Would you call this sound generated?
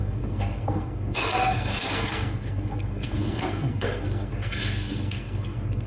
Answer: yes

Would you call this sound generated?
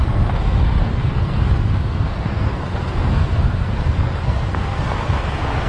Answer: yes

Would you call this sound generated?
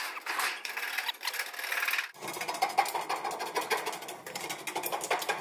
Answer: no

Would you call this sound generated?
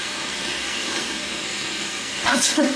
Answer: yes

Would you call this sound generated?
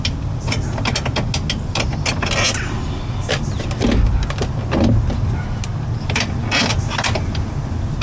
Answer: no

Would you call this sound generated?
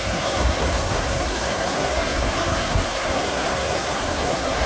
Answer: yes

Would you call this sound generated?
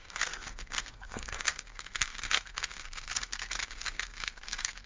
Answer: yes